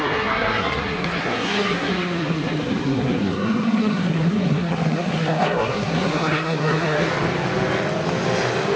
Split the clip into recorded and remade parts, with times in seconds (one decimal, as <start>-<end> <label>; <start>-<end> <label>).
0.0-7.1 remade; 7.1-8.8 recorded